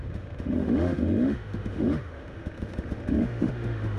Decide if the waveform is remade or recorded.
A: remade